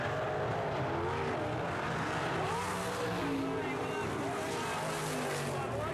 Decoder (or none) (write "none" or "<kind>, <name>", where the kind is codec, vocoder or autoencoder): none